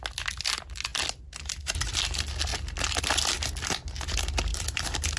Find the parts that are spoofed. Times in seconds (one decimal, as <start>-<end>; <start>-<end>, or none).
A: 2.5-3.0; 4.5-5.2

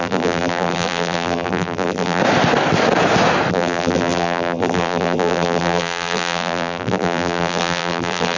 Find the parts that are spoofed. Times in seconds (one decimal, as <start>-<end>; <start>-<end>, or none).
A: 0.0-2.2; 3.5-8.4

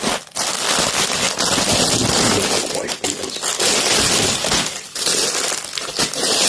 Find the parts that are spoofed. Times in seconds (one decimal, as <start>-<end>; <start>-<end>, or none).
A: none

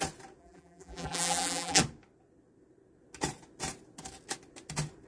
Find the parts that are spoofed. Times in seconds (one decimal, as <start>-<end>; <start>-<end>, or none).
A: 0.4-1.8

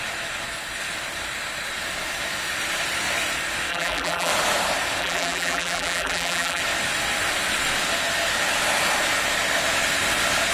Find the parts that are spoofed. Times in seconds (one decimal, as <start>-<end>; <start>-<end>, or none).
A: 3.7-4.3; 5.0-6.6

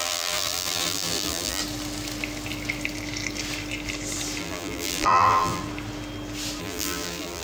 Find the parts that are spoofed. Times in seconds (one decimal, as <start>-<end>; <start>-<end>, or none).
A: 0.0-1.6; 4.4-5.6; 6.6-7.4